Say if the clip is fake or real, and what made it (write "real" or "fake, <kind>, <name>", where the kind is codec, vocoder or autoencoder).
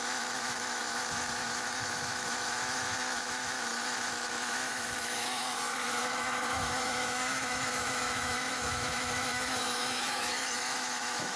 fake, autoencoder, DAC-VAE